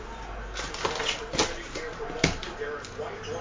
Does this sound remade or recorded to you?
recorded